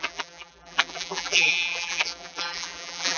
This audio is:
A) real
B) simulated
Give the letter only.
B